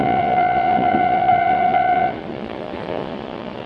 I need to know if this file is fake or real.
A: fake